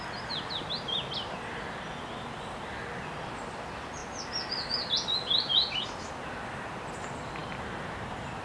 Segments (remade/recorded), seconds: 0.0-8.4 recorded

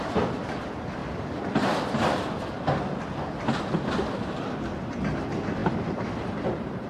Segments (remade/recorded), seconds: 0.0-5.6 recorded; 5.6-6.3 remade; 6.3-6.9 recorded

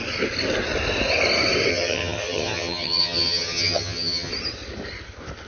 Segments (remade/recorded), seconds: 0.0-1.7 recorded; 1.7-4.3 remade; 4.3-5.5 recorded

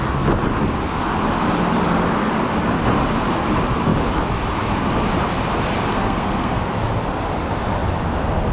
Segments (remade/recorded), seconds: 0.0-5.9 recorded; 5.9-6.7 remade; 6.7-8.5 recorded